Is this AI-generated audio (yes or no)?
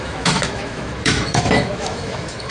yes